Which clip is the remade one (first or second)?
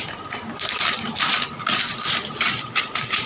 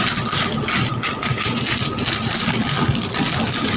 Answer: first